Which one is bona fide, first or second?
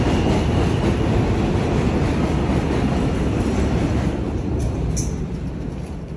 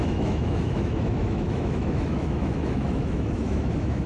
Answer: first